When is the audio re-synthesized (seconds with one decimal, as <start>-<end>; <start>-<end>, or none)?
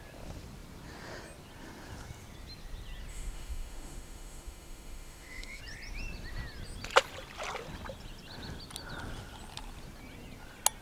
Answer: 3.1-5.6